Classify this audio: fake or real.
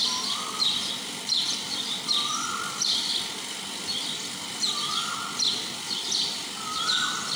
fake